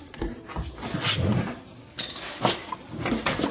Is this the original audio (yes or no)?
yes